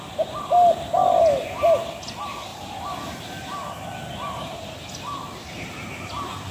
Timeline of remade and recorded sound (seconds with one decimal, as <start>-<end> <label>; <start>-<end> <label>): 0.0-6.5 recorded